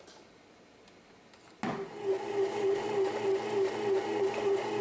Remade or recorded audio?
recorded